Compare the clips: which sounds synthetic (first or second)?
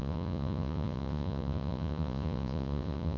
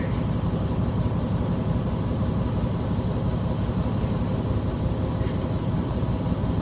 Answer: first